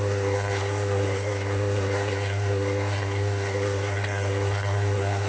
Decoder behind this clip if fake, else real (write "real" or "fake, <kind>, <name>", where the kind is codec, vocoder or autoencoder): fake, codec, SNAC